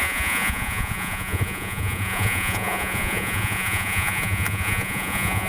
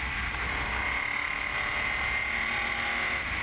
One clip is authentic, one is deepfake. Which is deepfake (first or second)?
first